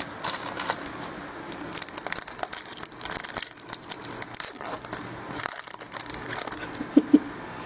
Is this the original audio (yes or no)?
yes